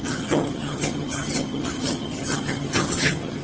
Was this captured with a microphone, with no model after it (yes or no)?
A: no